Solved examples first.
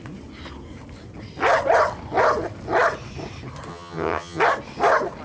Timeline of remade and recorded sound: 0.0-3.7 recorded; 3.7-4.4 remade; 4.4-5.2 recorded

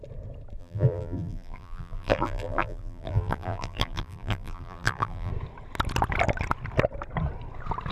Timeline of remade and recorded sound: 0.0-0.6 recorded; 0.6-5.3 remade; 5.3-7.9 recorded

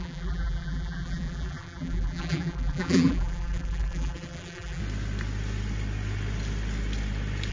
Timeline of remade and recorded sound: 0.0-4.8 remade; 4.8-7.5 recorded

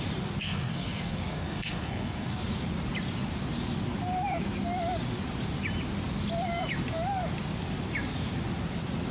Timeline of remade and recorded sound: 0.0-0.4 recorded; 0.4-2.4 remade; 2.4-9.1 recorded